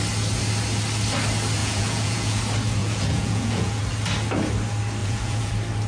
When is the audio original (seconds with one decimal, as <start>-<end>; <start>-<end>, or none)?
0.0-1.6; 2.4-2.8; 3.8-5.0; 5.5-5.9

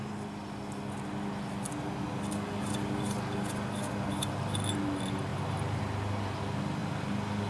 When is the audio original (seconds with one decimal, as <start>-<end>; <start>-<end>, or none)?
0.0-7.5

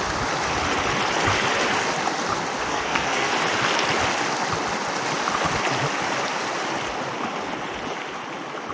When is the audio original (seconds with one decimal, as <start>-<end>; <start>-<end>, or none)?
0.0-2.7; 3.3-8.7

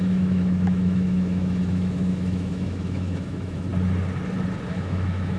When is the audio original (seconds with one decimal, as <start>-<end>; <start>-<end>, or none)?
3.7-4.7

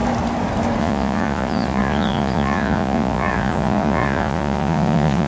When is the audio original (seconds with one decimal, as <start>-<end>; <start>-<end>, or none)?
0.0-0.8